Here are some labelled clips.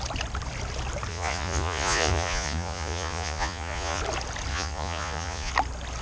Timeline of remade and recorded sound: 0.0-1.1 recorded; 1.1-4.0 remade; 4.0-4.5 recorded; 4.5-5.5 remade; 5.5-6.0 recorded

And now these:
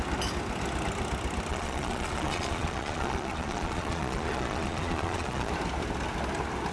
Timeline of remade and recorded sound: 0.0-1.5 recorded; 1.5-5.5 remade; 5.5-6.7 recorded